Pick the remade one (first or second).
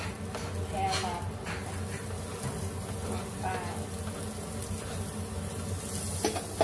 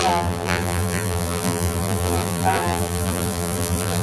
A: second